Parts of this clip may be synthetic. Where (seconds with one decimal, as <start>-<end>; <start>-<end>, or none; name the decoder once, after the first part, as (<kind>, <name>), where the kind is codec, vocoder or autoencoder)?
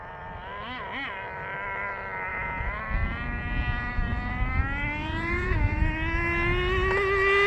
2.3-2.8 (vocoder, Vocos); 5.0-5.8